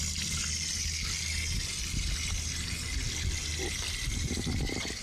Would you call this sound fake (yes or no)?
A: no